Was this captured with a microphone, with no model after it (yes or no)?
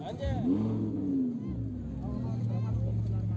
yes